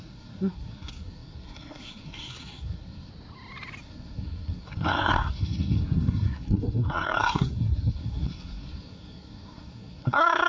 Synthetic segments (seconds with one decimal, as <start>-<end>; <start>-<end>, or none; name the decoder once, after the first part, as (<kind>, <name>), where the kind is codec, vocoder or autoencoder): 0.0-3.1 (codec, SNAC); 3.8-10.5